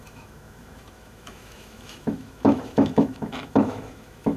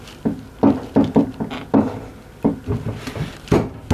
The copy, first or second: first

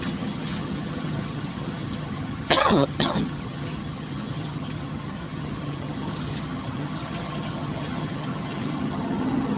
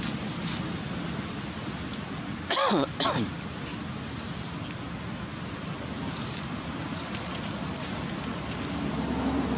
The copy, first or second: first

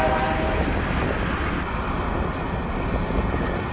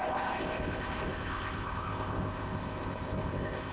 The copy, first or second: second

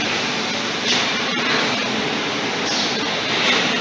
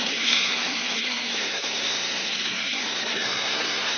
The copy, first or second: second